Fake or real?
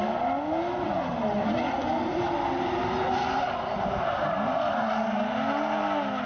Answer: real